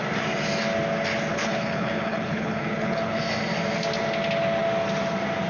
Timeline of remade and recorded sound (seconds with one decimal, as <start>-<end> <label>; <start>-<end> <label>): 0.0-1.3 recorded; 1.3-3.2 remade; 3.2-5.5 recorded